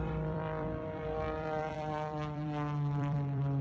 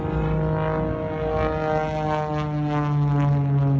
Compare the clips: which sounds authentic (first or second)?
second